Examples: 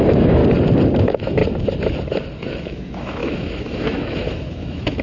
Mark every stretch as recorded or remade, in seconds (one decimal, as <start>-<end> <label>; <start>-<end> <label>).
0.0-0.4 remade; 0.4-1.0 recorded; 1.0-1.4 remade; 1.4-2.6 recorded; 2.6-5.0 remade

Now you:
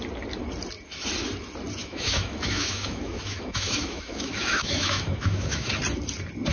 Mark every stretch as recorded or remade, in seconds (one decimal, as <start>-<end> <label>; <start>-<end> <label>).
0.0-1.8 recorded; 1.8-5.7 remade; 5.7-6.5 recorded

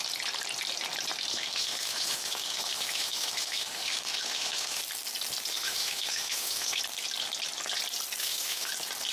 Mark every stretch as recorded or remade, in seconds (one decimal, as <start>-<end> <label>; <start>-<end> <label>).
0.0-1.3 recorded; 1.3-4.8 remade; 4.8-5.5 recorded; 5.5-6.8 remade; 6.8-8.2 recorded; 8.2-8.7 remade; 8.7-9.1 recorded